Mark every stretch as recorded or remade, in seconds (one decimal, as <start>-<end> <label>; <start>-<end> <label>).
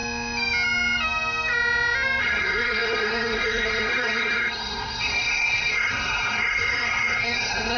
0.0-2.2 recorded; 2.2-7.8 remade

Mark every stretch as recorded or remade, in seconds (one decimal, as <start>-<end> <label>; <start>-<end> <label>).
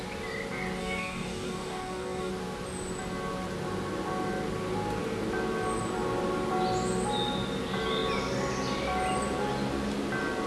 0.0-0.8 recorded; 0.8-2.3 remade; 2.3-10.5 recorded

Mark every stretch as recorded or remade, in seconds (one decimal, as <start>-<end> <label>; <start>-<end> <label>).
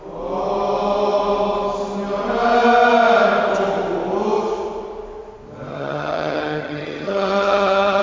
0.0-5.7 recorded; 5.7-8.0 remade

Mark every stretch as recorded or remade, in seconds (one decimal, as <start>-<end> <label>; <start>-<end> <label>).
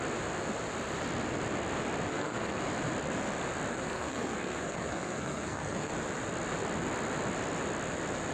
0.0-2.1 recorded; 2.1-2.6 remade; 2.6-3.7 recorded; 3.7-5.9 remade; 5.9-8.3 recorded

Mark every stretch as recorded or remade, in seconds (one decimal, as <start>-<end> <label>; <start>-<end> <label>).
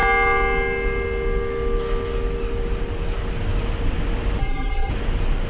0.0-4.4 recorded; 4.4-4.9 remade; 4.9-5.5 recorded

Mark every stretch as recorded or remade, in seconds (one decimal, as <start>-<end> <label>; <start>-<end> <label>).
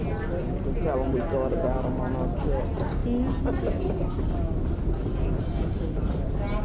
0.0-6.6 recorded